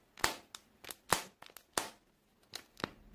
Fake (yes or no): no